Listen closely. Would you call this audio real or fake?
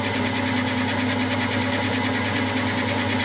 real